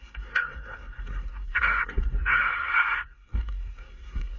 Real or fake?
fake